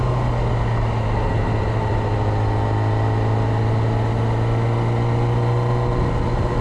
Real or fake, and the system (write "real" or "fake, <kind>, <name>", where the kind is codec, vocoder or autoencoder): real